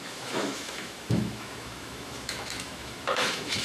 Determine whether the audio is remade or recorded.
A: remade